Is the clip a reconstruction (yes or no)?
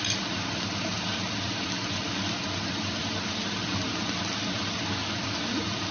no